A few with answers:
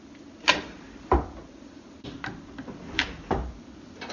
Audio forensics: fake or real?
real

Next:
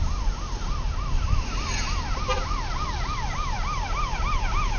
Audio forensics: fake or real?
real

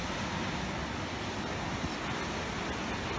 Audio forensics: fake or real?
real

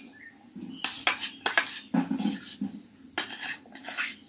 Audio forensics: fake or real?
real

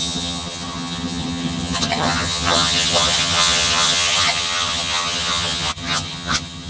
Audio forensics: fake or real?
fake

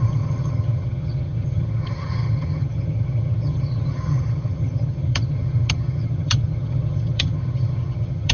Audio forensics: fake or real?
fake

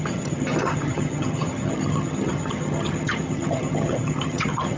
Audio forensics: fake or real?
fake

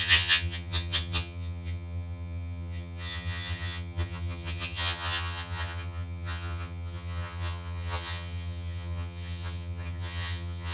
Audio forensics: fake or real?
fake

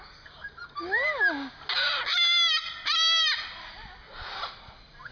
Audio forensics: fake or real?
real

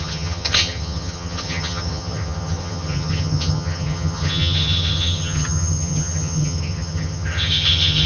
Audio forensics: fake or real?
fake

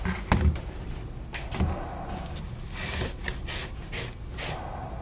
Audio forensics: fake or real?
real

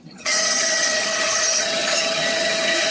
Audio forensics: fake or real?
fake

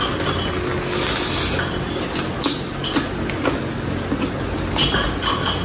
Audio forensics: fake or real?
real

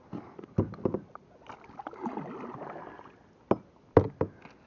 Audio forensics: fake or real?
real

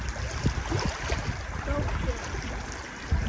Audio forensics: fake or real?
real